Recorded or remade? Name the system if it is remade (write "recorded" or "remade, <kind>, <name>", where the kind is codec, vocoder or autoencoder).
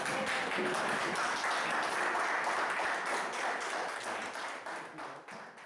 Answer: recorded